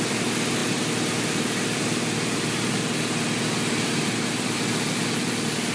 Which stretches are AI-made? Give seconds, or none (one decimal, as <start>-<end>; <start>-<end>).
none